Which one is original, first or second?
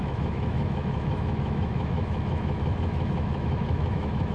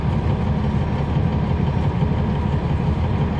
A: second